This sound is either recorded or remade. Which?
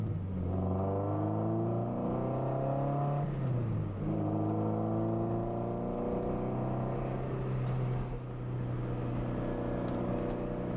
recorded